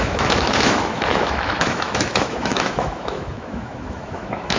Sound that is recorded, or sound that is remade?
remade